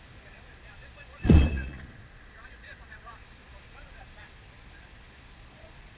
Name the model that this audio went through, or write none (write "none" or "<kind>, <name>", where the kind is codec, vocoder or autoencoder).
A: vocoder, Vocos